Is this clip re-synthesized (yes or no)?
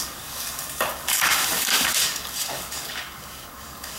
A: yes